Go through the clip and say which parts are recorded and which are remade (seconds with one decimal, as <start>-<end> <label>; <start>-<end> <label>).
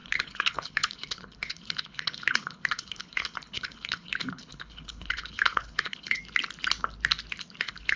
0.0-6.2 remade; 6.2-7.6 recorded; 7.6-8.0 remade